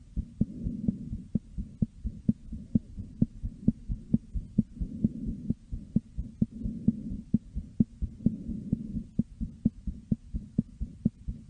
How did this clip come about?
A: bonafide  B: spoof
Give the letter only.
A